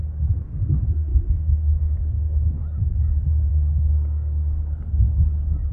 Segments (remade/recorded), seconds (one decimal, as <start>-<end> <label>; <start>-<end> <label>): 0.0-2.6 remade; 2.6-3.5 recorded; 3.5-5.1 remade; 5.1-5.7 recorded

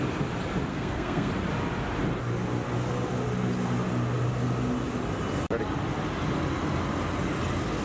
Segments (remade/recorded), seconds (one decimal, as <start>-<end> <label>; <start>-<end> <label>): 0.0-0.7 recorded; 0.7-1.3 remade; 1.3-7.8 recorded

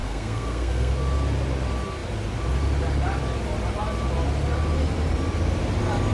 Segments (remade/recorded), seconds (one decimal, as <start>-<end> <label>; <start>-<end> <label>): 0.0-0.9 remade; 0.9-6.1 recorded

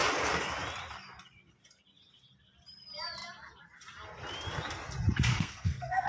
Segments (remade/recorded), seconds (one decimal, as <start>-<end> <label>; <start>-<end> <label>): 0.0-5.3 recorded; 5.3-6.1 remade

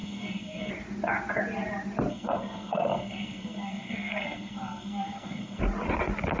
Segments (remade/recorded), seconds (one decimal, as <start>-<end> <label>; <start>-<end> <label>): 0.0-0.7 remade; 0.7-2.1 recorded; 2.1-5.6 remade; 5.6-6.4 recorded